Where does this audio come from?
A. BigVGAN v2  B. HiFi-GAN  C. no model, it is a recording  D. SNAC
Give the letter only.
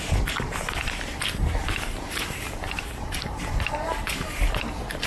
A